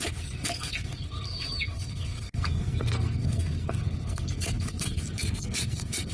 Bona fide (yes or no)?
no